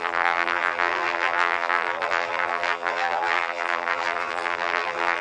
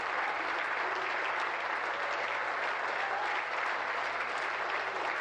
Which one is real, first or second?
second